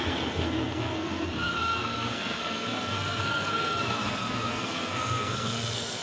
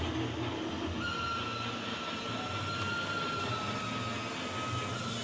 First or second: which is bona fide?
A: second